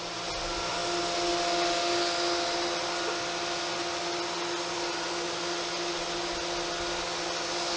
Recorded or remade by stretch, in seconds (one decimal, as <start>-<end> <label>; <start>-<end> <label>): 0.0-7.8 recorded

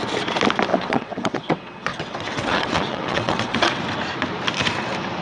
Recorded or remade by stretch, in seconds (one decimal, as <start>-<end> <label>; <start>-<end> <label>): 0.0-0.7 recorded; 0.7-3.8 remade; 3.8-5.2 recorded

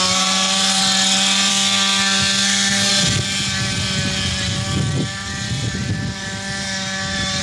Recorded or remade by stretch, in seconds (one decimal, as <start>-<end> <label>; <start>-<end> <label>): 0.0-0.8 remade; 0.8-1.5 recorded; 1.5-2.9 remade; 2.9-7.4 recorded

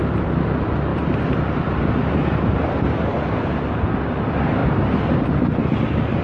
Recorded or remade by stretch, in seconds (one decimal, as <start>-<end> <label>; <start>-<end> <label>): 0.0-0.9 recorded; 0.9-2.9 remade; 2.9-4.6 recorded; 4.6-5.3 remade; 5.3-6.2 recorded

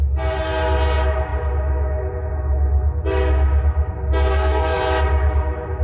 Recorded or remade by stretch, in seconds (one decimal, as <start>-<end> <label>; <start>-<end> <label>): 0.0-4.3 recorded; 4.3-4.8 remade; 4.8-5.8 recorded

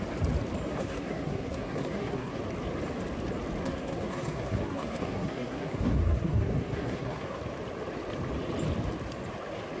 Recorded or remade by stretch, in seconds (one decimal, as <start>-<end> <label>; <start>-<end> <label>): 0.0-0.7 recorded; 0.7-2.4 remade; 2.4-3.6 recorded; 3.6-7.4 remade; 7.4-9.8 recorded

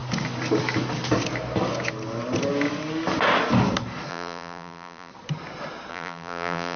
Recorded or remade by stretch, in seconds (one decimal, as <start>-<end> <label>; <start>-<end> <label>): 0.0-4.1 recorded; 4.1-5.1 remade; 5.1-5.9 recorded; 5.9-6.8 remade

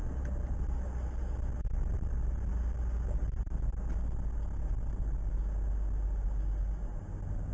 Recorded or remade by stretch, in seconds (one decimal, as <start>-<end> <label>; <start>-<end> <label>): 0.0-7.5 recorded